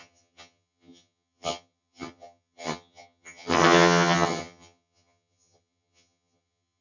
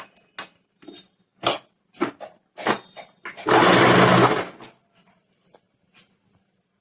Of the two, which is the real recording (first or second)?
second